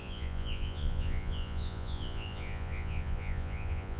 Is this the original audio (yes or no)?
no